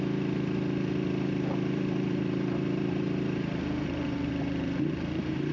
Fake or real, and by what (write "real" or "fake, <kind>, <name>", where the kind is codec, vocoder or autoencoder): fake, vocoder, BigVGAN v2